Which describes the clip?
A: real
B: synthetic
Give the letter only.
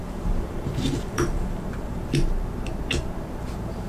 B